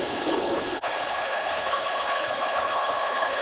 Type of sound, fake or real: fake